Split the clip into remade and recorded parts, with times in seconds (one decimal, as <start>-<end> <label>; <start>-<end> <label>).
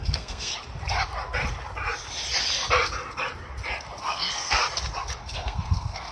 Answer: 0.0-0.5 remade; 0.5-4.0 recorded; 4.0-4.6 remade; 4.6-5.2 recorded; 5.2-6.1 remade